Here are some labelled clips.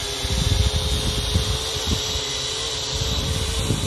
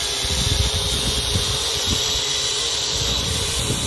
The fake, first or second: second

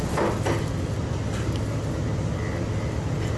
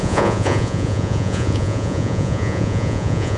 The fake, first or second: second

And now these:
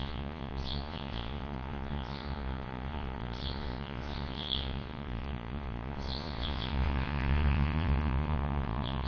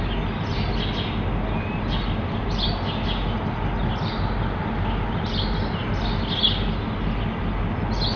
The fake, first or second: first